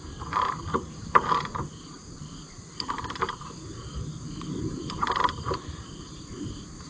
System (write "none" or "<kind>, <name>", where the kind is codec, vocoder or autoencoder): vocoder, BigVGAN v2